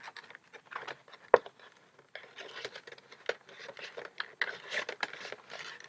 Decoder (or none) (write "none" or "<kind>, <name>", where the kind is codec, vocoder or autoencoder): none